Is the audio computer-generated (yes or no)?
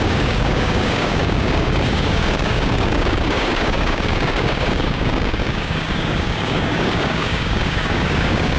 yes